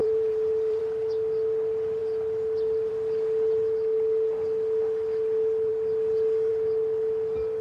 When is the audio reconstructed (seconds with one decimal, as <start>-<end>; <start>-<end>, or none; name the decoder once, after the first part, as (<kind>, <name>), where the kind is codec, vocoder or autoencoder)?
0.0-0.8 (vocoder, BigVGAN v2)